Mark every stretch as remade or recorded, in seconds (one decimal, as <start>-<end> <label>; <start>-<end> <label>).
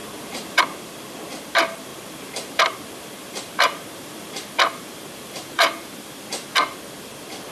0.0-0.6 remade; 0.6-1.9 recorded; 1.9-6.0 remade; 6.0-7.5 recorded